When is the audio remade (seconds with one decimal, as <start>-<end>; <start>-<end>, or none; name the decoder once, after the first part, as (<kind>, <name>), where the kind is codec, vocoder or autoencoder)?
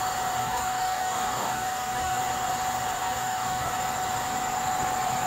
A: 0.4-2.2 (codec, DAC); 3.0-3.7